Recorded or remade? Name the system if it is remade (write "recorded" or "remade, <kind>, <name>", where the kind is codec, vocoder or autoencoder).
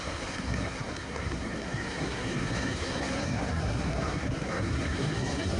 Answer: remade, codec, SNAC